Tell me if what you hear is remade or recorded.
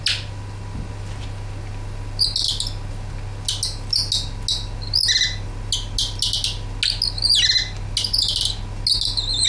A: recorded